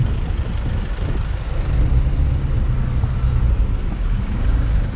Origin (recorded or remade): recorded